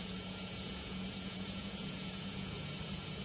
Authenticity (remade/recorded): remade